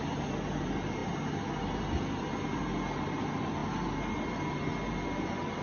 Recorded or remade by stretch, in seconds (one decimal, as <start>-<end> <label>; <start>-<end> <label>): 0.0-5.6 recorded